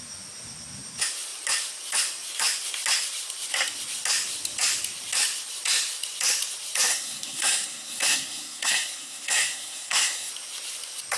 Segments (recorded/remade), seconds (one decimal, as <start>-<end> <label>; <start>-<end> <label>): 0.0-6.9 recorded; 6.9-10.3 remade; 10.3-11.2 recorded